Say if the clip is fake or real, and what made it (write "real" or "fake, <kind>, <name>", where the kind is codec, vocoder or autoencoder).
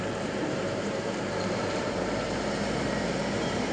fake, vocoder, BigVGAN v2